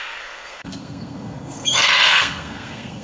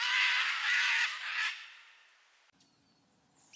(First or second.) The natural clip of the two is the second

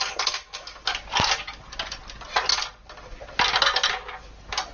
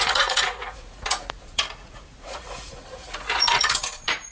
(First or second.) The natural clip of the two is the first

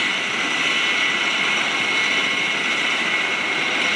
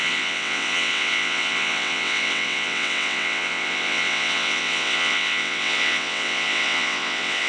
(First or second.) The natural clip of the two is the first